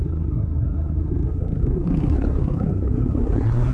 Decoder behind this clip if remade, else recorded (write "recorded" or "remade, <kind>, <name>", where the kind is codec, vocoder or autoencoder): remade, codec, SNAC